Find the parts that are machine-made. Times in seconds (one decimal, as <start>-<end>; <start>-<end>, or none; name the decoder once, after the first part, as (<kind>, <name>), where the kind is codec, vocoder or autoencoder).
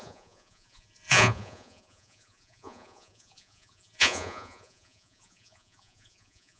0.0-6.6 (vocoder, Vocos)